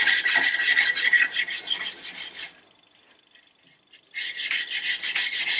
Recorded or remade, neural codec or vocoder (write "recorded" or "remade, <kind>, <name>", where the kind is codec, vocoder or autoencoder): recorded